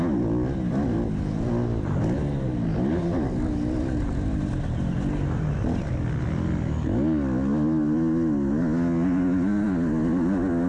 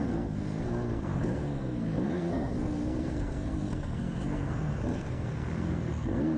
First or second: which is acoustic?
first